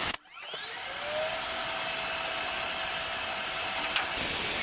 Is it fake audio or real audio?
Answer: real